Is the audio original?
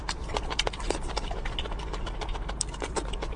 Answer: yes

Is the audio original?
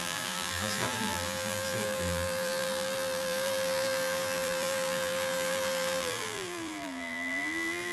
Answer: no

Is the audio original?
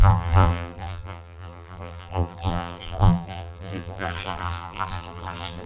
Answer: no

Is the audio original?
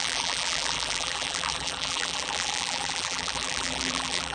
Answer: no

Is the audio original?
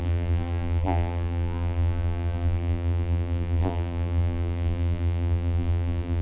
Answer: no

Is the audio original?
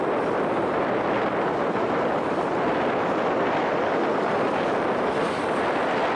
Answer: yes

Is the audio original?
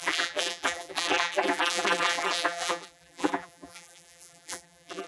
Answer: no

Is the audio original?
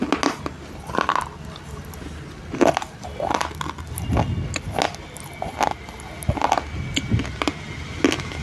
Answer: yes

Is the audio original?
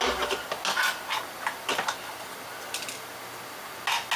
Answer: yes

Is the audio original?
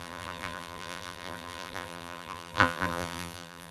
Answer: no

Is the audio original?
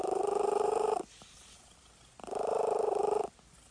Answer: no